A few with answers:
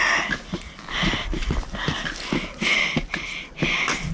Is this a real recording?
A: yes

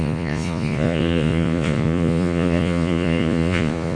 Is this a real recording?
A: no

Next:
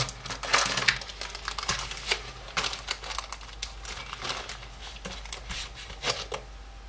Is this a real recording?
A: yes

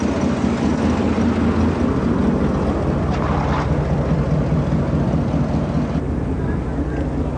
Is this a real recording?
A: yes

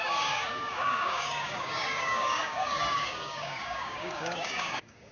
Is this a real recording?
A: no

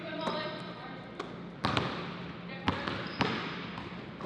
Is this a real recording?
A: yes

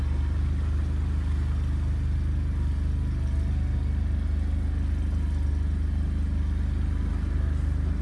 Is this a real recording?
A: yes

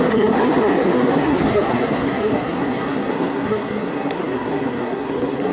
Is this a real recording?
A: no